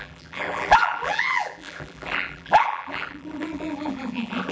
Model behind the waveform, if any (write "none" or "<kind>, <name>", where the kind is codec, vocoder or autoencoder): vocoder, BigVGAN v2